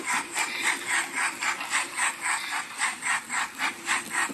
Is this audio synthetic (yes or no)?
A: no